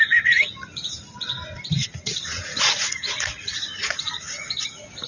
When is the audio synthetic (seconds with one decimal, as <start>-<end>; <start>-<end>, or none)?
1.8-4.5